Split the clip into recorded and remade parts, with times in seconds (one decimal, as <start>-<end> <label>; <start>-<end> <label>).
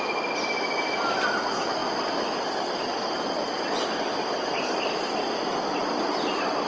0.0-6.7 recorded